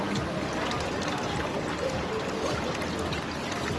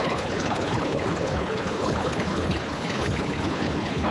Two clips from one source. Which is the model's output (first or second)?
second